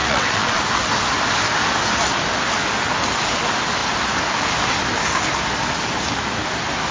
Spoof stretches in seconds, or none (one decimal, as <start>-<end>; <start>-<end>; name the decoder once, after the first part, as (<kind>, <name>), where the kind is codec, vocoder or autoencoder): 0.0-0.6 (vocoder, WaveNeXt)